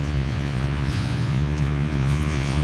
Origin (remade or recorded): remade